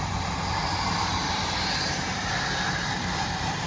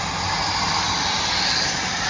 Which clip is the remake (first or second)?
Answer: first